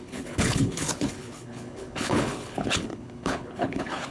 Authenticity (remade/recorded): remade